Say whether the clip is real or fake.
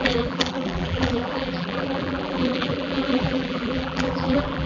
fake